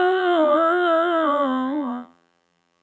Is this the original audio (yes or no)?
no